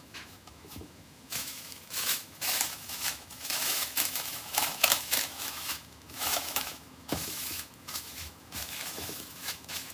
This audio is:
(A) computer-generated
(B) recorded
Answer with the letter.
A